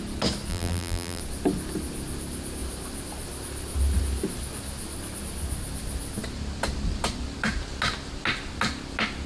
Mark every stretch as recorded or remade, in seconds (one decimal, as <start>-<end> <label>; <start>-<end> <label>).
0.0-0.5 recorded; 0.5-1.2 remade; 1.2-9.3 recorded